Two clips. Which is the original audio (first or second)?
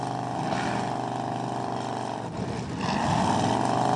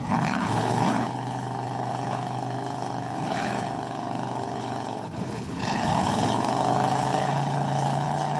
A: first